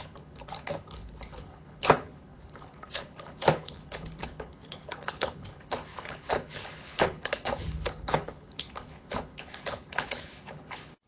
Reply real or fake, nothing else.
fake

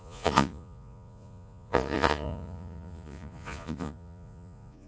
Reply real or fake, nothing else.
fake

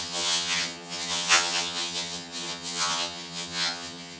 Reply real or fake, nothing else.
fake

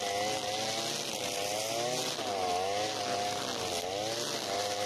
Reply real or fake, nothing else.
real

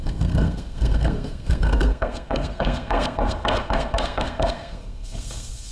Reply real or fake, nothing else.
fake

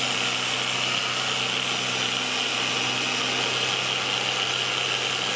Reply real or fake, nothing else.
real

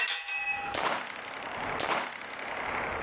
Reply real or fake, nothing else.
real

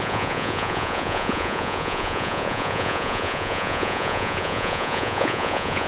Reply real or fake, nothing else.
fake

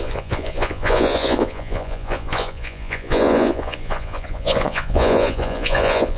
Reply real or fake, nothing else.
fake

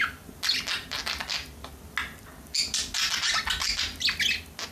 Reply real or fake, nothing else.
real